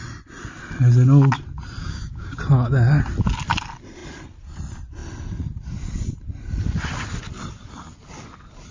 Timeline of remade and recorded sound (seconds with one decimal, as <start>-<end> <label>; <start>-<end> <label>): 0.0-1.8 recorded; 1.8-2.4 remade; 2.4-8.7 recorded